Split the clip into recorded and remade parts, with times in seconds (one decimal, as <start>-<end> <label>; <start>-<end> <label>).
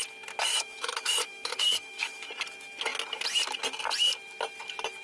0.0-0.5 recorded; 0.5-2.3 remade; 2.3-5.0 recorded